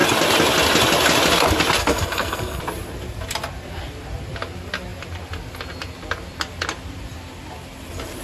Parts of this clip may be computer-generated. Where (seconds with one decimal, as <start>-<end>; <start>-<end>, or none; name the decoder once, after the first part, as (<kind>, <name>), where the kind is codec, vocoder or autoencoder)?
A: 1.8-2.6 (codec, SNAC)